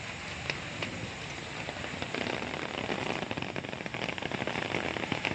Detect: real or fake real